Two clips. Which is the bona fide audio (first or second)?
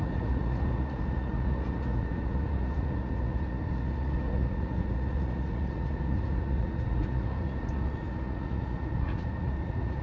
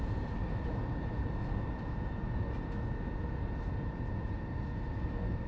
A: second